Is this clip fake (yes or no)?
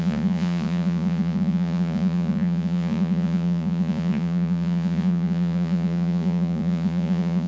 yes